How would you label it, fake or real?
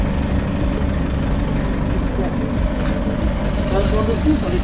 real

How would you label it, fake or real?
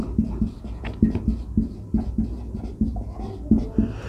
real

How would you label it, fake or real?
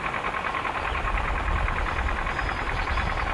real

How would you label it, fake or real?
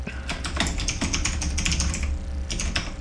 real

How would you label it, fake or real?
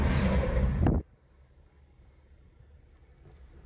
real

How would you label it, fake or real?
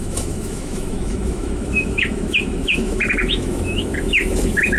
fake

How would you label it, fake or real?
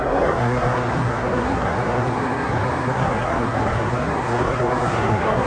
fake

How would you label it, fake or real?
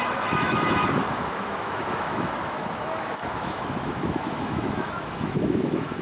fake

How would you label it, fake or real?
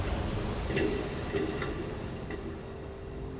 real